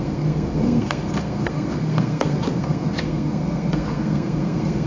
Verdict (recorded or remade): remade